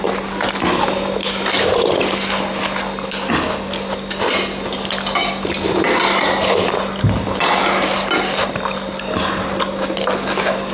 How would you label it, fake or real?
real